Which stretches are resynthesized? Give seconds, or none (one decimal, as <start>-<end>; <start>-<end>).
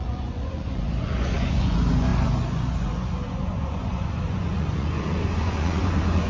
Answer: 0.0-6.3